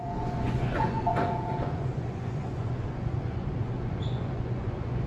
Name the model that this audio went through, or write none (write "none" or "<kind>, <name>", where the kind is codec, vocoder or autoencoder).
vocoder, Vocos